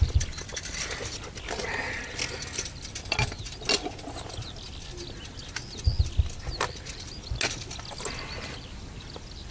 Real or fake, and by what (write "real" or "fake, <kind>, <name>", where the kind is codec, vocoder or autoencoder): real